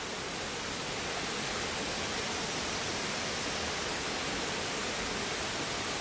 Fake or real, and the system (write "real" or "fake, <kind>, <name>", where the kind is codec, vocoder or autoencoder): real